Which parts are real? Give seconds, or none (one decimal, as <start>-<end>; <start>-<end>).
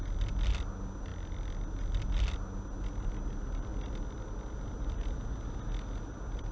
0.0-6.5